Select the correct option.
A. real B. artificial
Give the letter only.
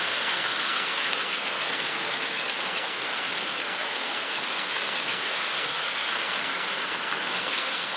B